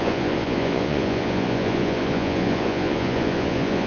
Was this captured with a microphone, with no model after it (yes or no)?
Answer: no